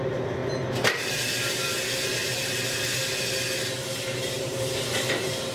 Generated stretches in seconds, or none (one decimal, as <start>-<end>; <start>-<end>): 3.8-4.8